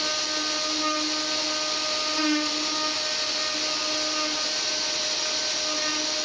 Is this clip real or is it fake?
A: real